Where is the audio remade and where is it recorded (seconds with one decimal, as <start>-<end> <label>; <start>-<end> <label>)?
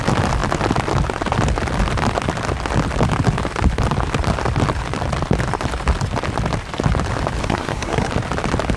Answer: 0.0-7.4 recorded; 7.4-8.1 remade; 8.1-8.8 recorded